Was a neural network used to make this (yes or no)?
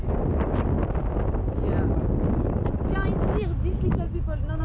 no